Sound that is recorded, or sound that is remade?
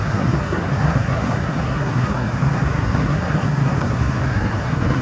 remade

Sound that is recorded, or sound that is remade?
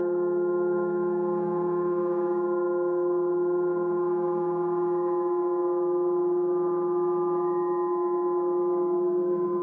remade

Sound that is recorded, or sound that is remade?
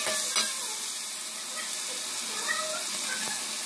recorded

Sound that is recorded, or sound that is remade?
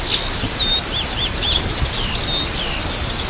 recorded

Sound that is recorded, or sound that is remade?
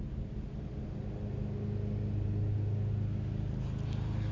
recorded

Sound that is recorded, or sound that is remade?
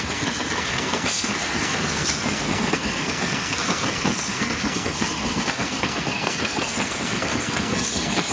remade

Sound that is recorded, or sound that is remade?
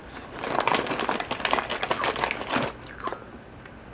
recorded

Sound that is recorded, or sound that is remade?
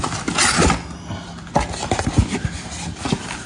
recorded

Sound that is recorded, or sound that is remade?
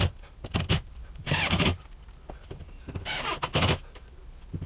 recorded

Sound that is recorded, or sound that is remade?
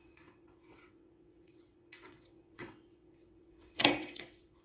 remade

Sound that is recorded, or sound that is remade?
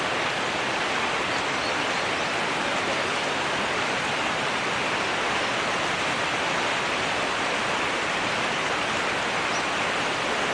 recorded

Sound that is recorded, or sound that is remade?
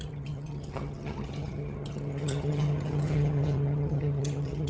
remade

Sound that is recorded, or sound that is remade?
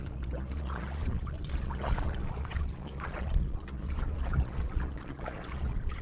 remade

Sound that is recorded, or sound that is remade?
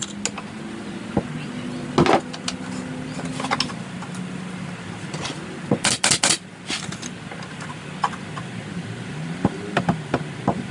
recorded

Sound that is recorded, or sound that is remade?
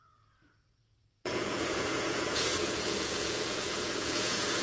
remade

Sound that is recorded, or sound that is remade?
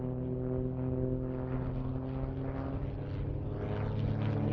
recorded